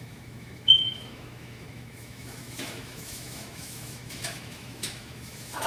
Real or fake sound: fake